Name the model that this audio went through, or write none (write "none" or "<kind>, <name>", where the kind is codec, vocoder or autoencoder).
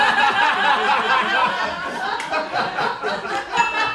none